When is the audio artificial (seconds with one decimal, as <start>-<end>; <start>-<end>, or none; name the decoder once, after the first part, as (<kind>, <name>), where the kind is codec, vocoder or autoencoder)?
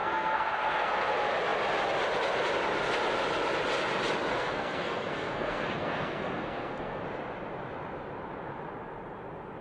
0.0-1.1 (codec, SNAC); 4.3-7.0